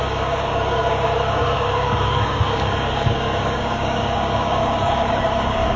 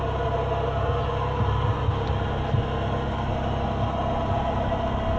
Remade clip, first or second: first